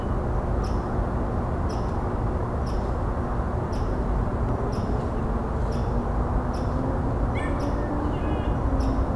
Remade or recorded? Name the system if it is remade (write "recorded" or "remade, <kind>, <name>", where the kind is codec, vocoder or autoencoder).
recorded